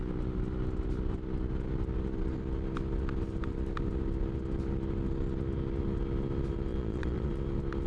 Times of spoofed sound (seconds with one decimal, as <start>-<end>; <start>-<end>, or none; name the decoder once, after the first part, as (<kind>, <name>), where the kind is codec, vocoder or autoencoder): 6.7-7.3 (vocoder, Vocos)